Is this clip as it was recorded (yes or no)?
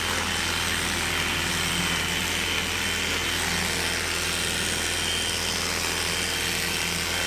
yes